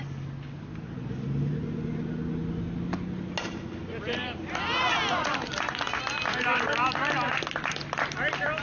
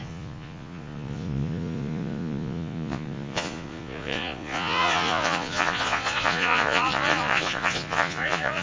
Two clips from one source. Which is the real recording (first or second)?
first